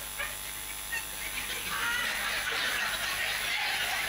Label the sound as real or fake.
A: real